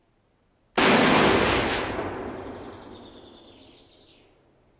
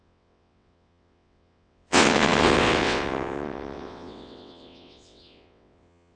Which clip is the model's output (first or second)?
second